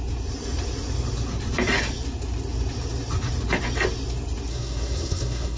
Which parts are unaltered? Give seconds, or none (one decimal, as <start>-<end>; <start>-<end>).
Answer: 0.0-4.5